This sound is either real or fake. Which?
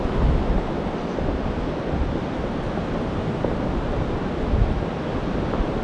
real